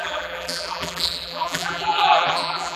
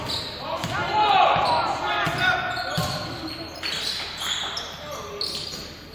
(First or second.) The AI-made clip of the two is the first